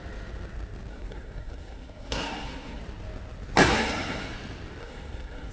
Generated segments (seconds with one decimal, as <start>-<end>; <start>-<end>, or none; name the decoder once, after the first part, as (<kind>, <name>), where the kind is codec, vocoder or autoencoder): 0.9-2.8 (codec, SNAC); 3.6-4.3; 4.8-5.5